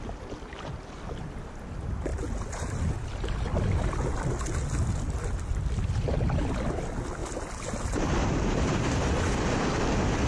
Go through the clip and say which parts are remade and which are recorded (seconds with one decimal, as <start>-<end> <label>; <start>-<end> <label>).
0.0-2.1 recorded; 2.1-3.1 remade; 3.1-10.3 recorded

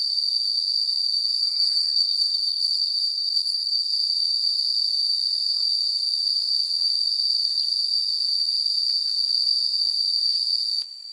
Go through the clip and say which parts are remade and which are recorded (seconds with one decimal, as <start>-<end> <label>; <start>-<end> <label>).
0.0-1.4 recorded; 1.4-3.9 remade; 3.9-11.1 recorded

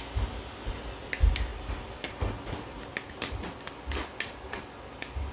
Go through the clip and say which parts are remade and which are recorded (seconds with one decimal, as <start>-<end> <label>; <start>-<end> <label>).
0.0-5.3 recorded